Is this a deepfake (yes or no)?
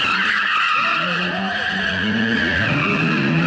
yes